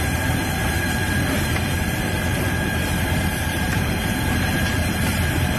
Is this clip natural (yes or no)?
no